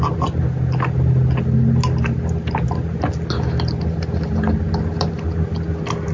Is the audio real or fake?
real